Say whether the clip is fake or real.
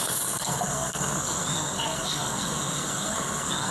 fake